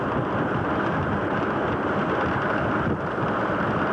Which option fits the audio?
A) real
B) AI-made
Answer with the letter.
A